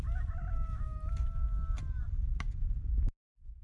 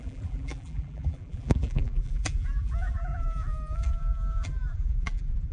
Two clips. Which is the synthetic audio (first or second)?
second